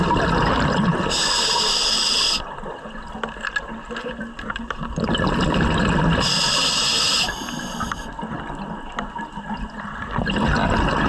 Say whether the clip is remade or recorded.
recorded